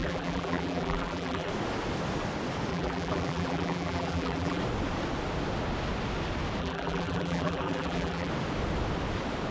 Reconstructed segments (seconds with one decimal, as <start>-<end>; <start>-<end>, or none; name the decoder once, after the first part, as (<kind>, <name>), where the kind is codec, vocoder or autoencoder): 0.0-1.5 (vocoder, BigVGAN v2); 2.7-4.6; 6.6-8.3